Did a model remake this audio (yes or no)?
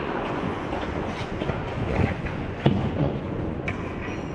yes